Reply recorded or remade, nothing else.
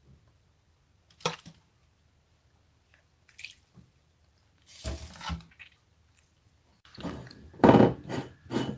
recorded